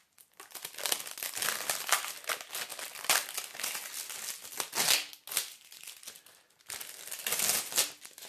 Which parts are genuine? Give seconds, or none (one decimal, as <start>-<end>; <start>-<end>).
0.0-8.3